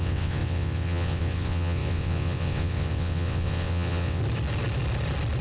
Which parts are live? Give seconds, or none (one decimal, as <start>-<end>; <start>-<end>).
4.2-5.4